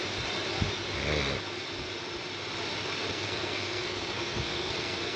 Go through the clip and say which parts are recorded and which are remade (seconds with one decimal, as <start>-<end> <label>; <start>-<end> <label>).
0.0-3.1 recorded; 3.1-5.2 remade